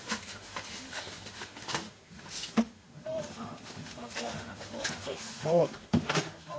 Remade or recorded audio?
remade